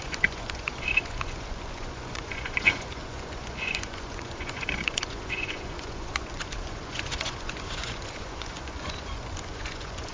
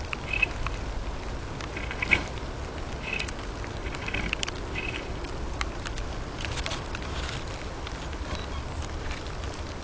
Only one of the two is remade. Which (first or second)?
first